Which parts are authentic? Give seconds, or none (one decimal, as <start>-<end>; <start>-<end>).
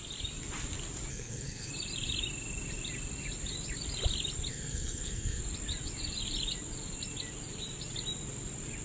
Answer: 0.0-1.1; 1.7-4.5; 5.4-8.8